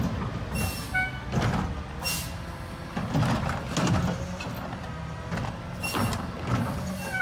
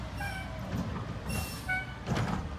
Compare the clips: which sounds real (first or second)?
first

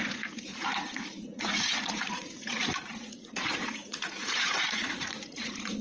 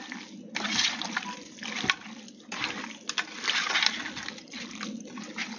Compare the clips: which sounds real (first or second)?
second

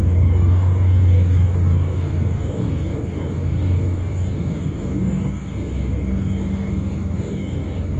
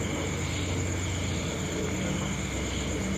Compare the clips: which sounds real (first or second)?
second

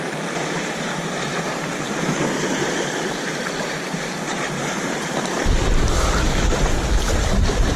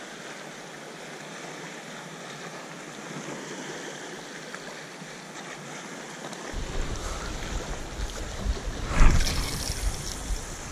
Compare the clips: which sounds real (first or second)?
second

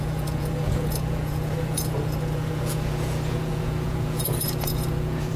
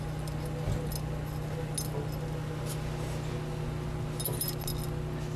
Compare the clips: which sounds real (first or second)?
second